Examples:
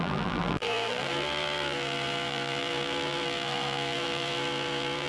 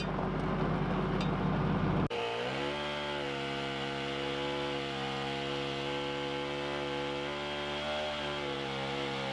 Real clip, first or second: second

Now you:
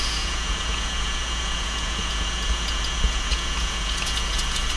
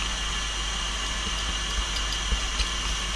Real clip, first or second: second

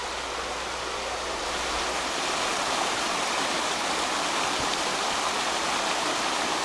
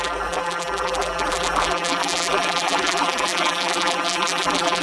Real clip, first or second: first